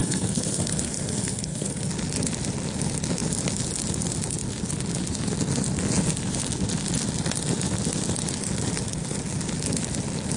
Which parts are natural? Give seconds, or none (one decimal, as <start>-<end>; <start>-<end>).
1.9-10.4